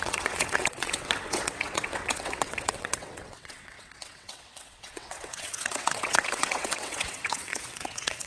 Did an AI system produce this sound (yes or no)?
yes